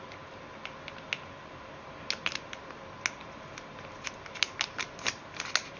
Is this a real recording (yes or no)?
yes